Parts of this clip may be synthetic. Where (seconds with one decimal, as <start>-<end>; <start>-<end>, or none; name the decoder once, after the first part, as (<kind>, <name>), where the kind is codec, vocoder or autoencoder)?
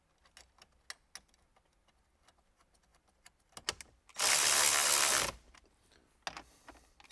none